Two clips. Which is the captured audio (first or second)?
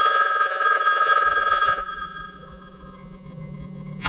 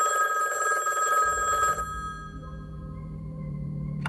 second